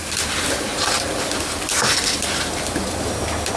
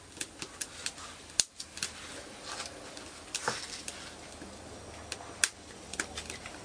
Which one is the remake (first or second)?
first